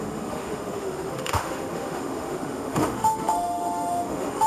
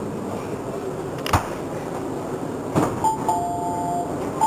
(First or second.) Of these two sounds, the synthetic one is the first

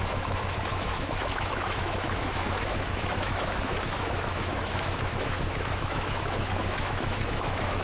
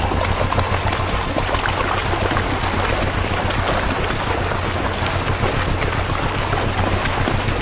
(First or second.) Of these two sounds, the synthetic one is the first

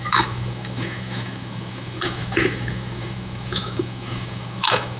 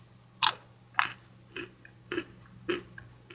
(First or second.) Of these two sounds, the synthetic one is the first